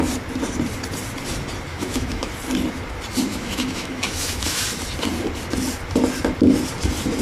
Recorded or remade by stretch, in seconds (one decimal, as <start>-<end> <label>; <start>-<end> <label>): 0.0-1.7 recorded; 1.7-2.3 remade; 2.3-3.3 recorded; 3.3-4.6 remade; 4.6-7.2 recorded